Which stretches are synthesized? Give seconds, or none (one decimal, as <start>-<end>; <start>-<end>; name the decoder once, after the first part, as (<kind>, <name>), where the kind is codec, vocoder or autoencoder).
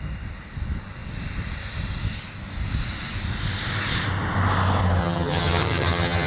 5.0-6.3 (vocoder, HiFi-GAN)